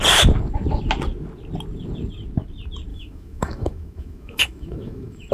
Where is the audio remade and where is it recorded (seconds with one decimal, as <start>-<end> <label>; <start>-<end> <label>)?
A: 0.0-2.9 recorded; 2.9-5.3 remade

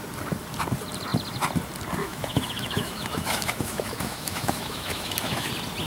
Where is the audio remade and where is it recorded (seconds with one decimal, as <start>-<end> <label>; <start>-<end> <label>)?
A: 0.0-2.0 recorded; 2.0-5.5 remade; 5.5-5.9 recorded

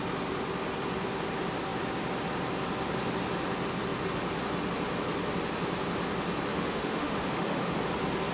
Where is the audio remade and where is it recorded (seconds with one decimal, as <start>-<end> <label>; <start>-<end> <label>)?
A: 0.0-6.5 recorded; 6.5-7.8 remade; 7.8-8.3 recorded

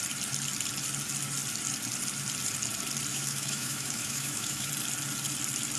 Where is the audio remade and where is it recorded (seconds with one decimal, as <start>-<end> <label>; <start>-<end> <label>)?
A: 0.0-3.1 recorded; 3.1-4.7 remade; 4.7-5.8 recorded

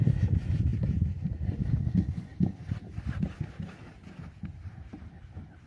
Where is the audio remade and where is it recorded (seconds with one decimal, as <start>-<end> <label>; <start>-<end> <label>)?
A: 0.0-5.7 recorded

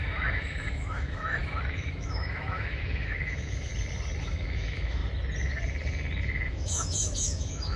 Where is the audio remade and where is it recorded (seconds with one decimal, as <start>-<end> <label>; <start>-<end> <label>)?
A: 0.0-3.7 remade; 3.7-4.2 recorded; 4.2-5.0 remade; 5.0-6.5 recorded; 6.5-7.8 remade

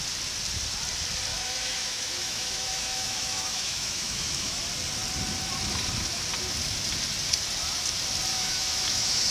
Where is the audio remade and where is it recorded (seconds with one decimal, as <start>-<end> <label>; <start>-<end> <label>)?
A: 0.0-1.3 recorded; 1.3-4.6 remade; 4.6-8.3 recorded; 8.3-9.3 remade